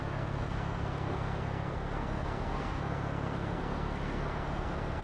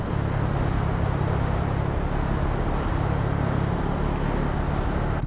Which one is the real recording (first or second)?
second